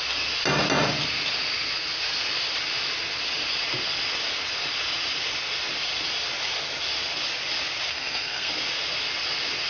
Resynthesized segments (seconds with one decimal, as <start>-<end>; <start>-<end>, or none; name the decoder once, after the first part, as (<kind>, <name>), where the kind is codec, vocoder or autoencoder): 7.9-8.5 (codec, SNAC)